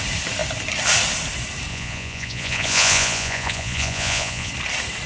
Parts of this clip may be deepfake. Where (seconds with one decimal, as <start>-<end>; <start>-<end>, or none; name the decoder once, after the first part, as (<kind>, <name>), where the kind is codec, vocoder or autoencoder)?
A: 1.7-4.5 (vocoder, Vocos)